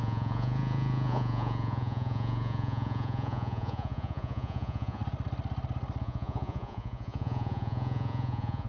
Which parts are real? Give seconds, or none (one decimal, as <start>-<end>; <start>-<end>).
5.0-6.0

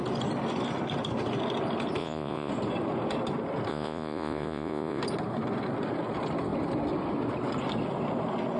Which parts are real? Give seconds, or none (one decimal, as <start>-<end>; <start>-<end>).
0.0-2.0; 2.5-3.7; 5.0-8.6

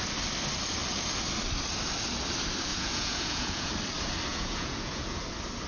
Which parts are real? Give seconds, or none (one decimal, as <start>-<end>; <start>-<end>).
0.0-2.7; 3.7-4.3; 5.2-5.7

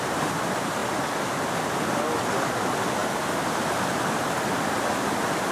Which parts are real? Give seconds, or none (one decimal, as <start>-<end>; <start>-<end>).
0.0-5.5

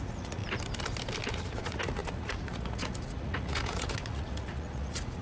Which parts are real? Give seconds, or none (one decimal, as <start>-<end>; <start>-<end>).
0.4-1.3

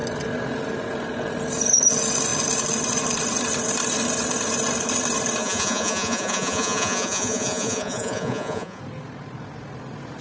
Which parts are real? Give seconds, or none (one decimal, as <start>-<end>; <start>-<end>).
0.0-5.4; 8.8-10.2

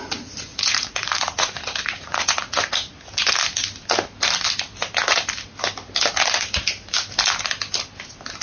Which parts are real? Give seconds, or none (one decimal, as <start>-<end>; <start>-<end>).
0.0-0.5; 3.0-8.4

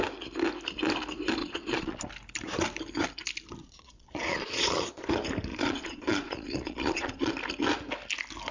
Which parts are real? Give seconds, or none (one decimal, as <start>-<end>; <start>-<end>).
0.0-1.4; 2.0-3.6; 5.1-5.5; 7.3-8.5